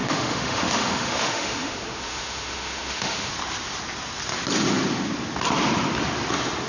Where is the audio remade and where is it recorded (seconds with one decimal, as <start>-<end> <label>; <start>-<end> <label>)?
0.0-3.3 remade; 3.3-6.7 recorded